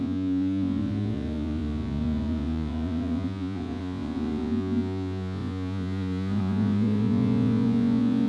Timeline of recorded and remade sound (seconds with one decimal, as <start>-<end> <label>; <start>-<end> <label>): 0.0-8.3 remade